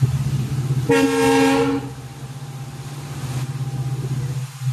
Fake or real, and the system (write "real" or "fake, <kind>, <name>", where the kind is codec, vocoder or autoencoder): real